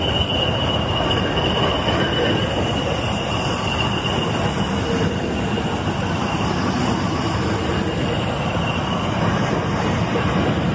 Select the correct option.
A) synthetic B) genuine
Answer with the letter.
B